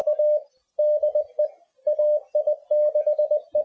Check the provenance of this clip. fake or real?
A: real